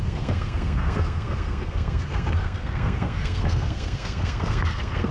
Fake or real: fake